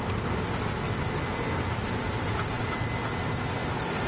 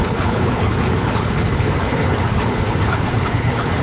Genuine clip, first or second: first